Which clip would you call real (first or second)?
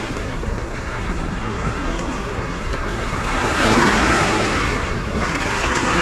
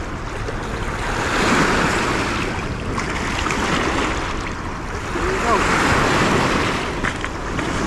second